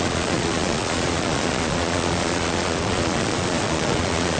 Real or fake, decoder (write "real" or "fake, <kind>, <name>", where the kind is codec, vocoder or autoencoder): fake, vocoder, Vocos